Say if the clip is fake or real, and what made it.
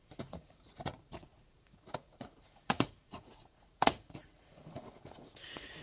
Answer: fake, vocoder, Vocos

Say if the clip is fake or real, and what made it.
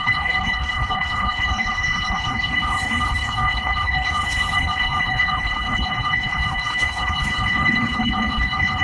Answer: fake, codec, HILCodec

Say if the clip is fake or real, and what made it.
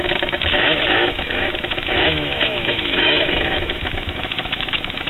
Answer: fake, autoencoder, DAC-VAE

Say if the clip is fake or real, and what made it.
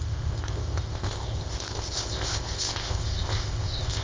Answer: fake, codec, ZipCodec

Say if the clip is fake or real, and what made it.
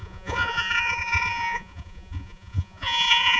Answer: fake, vocoder, Vocos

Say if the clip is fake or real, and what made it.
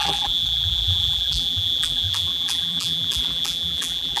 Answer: fake, vocoder, BigVGAN v2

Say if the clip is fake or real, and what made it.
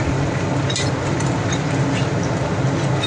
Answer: real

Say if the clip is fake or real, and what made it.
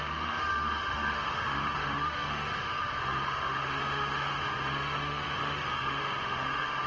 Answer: fake, autoencoder, DAC-VAE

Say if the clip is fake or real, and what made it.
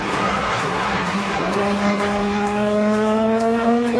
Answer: fake, codec, SNAC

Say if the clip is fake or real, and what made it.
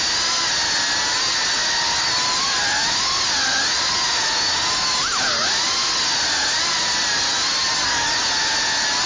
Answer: real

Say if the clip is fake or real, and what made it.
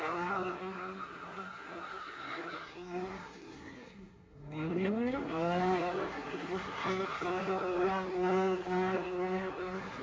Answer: fake, codec, SNAC